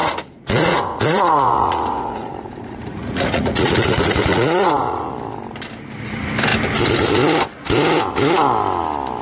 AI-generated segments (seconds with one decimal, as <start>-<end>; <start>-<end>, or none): 0.0-5.1